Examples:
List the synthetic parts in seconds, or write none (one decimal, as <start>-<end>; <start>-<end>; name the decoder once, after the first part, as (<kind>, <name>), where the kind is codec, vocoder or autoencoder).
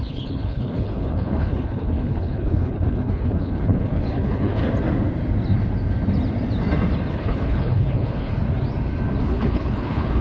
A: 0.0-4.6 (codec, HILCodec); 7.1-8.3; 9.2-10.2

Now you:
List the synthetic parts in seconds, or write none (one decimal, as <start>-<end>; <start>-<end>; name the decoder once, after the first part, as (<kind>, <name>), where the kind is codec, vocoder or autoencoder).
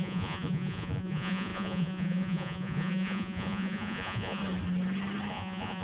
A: 0.0-4.4 (vocoder, Vocos); 5.3-5.8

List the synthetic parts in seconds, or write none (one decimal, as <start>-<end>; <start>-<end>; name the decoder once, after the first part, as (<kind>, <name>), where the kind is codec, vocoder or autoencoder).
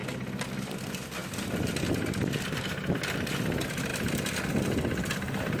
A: 0.6-1.2 (vocoder, BigVGAN v2); 2.9-3.9; 4.6-5.6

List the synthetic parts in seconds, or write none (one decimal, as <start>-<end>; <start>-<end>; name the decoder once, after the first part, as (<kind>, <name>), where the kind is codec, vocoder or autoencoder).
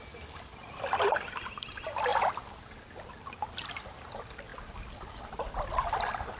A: none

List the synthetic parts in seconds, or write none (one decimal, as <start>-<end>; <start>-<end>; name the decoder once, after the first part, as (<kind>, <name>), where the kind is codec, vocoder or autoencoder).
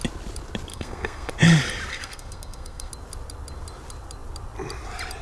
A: 0.7-1.3 (codec, SNAC); 1.9-2.9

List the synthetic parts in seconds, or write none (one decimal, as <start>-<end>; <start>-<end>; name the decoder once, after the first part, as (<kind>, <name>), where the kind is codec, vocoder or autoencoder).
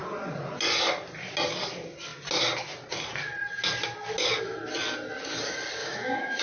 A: 5.8-6.4 (autoencoder, DAC-VAE)